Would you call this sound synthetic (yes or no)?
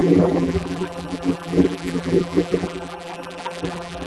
yes